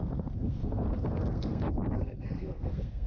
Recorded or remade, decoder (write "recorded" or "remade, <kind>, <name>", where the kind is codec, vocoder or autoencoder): remade, codec, SNAC